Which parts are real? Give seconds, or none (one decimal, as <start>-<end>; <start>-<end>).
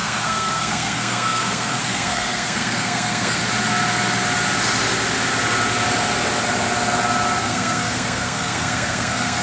3.4-7.4